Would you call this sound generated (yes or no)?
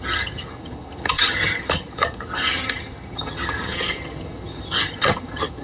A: yes